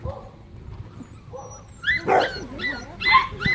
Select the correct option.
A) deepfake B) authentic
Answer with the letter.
B